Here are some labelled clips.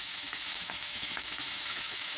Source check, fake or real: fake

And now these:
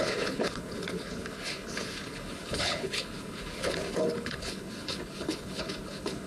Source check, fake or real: fake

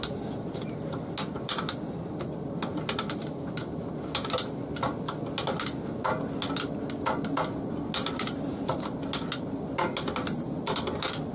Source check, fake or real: real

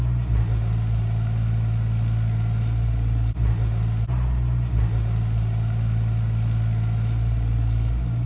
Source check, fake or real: real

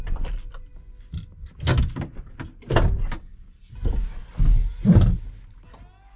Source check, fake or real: real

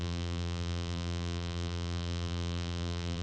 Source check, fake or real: fake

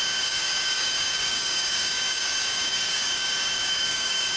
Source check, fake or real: fake